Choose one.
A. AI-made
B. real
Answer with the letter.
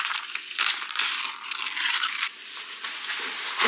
B